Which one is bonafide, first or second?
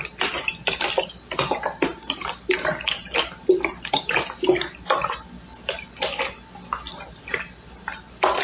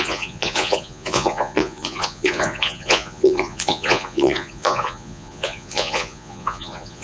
first